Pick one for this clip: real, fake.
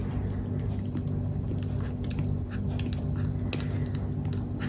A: real